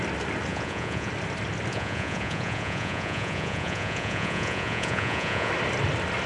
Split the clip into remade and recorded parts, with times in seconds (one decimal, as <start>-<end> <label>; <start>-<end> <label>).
0.0-0.5 recorded; 0.5-1.1 remade; 1.1-1.7 recorded; 1.7-5.5 remade; 5.5-6.3 recorded